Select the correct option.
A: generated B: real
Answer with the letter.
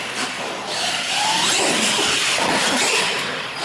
B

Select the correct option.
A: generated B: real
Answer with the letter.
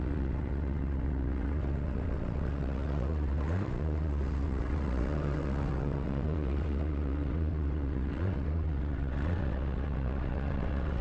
A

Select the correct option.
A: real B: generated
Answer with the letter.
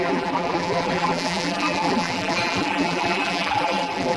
B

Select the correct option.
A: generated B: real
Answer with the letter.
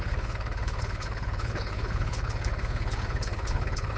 A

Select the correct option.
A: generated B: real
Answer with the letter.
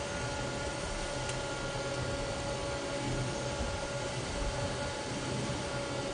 B